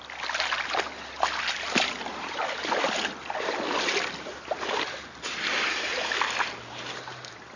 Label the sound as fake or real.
real